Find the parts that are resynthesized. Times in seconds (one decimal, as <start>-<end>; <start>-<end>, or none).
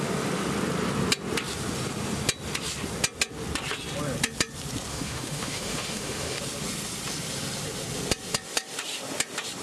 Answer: 4.9-6.4